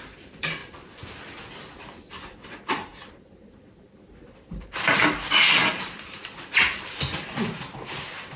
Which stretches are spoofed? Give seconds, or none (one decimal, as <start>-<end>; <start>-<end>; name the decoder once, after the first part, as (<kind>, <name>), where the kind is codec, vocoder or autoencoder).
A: 2.9-5.0 (vocoder, BigVGAN v2); 5.7-6.2